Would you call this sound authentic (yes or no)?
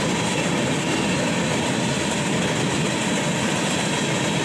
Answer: yes